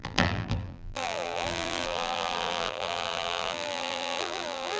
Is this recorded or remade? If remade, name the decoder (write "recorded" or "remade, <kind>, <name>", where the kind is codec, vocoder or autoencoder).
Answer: remade, vocoder, BigVGAN v2